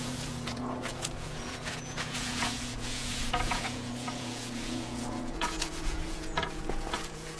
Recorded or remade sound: remade